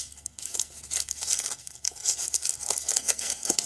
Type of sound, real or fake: fake